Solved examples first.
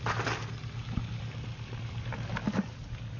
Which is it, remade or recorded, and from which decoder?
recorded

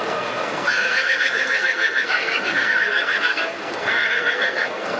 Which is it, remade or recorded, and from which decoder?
remade, codec, SNAC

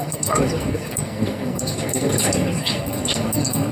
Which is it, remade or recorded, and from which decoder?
remade, codec, SNAC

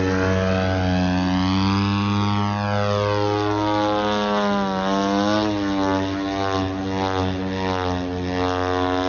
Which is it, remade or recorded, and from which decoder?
recorded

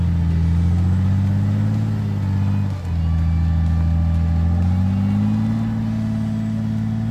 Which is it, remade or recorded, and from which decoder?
recorded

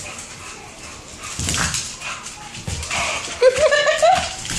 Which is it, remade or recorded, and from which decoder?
recorded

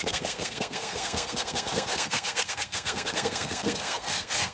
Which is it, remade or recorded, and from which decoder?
remade, codec, SNAC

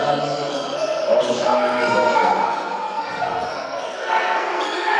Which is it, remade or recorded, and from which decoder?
remade, codec, SNAC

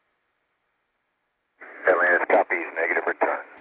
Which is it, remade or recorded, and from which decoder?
recorded